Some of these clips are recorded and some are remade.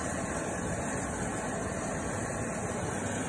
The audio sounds remade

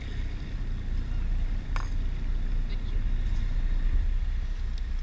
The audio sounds recorded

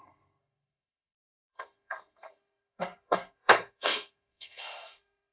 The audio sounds remade